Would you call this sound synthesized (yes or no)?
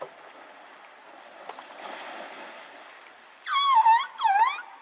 no